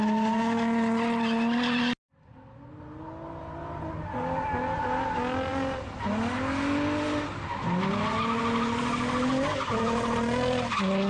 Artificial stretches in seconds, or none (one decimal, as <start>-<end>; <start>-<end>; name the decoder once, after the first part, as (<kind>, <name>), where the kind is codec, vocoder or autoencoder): none